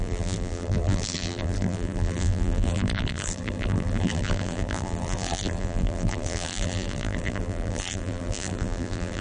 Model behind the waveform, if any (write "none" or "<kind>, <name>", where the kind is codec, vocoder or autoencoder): vocoder, BigVGAN v2